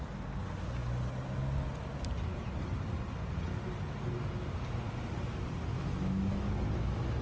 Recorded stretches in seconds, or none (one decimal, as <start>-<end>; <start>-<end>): 0.0-5.7; 6.3-7.2